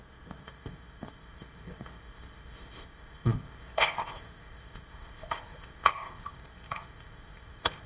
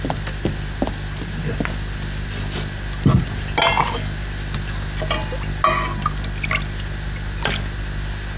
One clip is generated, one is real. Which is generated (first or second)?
first